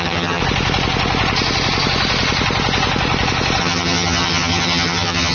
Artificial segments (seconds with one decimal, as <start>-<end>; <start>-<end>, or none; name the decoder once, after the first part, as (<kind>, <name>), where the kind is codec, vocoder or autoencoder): 0.0-0.4 (vocoder, HiFi-GAN); 3.6-5.3